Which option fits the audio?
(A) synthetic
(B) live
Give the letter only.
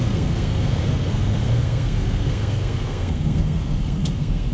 A